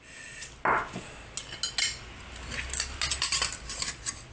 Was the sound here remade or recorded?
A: recorded